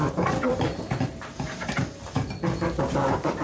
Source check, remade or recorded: recorded